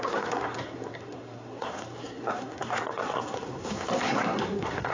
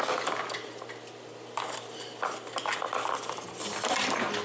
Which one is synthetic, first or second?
first